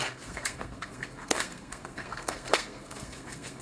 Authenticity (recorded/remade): remade